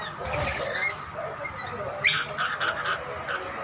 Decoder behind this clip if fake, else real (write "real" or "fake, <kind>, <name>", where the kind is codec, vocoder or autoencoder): real